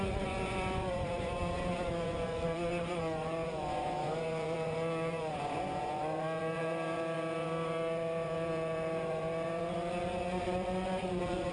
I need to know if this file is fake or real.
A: fake